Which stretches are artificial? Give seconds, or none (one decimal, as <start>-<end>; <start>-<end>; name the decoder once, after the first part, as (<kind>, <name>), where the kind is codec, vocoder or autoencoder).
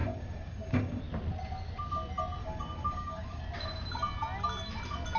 0.0-1.0 (codec, DAC); 2.4-3.4